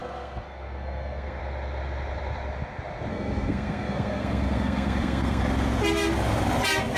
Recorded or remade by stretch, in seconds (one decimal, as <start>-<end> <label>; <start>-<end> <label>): 0.0-1.4 remade; 1.4-3.1 recorded; 3.1-5.4 remade; 5.4-7.0 recorded